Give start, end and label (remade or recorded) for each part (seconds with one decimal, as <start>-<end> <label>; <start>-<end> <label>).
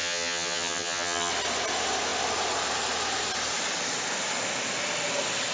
0.0-1.3 remade; 1.3-5.5 recorded